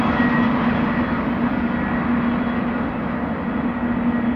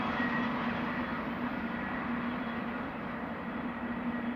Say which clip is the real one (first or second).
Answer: first